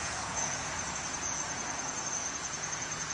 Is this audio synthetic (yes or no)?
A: yes